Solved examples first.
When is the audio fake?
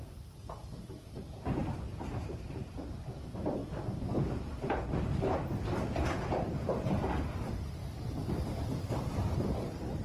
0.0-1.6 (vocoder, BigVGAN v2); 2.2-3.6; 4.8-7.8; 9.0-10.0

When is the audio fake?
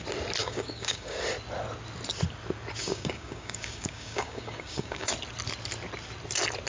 0.4-1.2 (codec, DAC); 2.8-5.1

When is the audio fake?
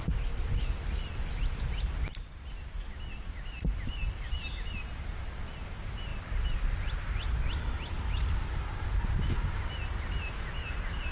none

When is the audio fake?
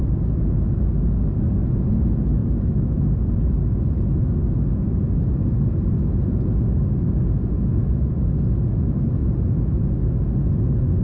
none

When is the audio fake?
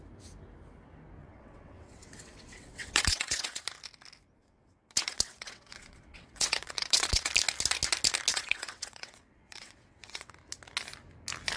1.2-3.6 (vocoder, WaveNeXt); 4.4-7.3; 8.3-10.3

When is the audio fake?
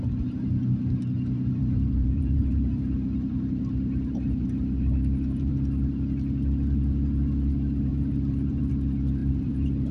1.6-5.5 (vocoder, BigVGAN v2); 7.9-8.7; 9.2-9.9